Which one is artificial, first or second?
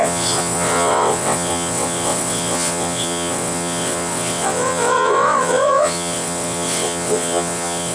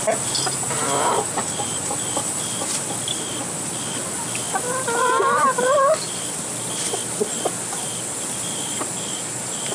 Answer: first